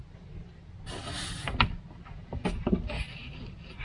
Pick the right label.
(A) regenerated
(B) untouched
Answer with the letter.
B